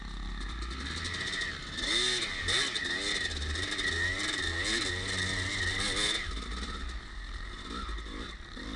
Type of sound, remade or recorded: recorded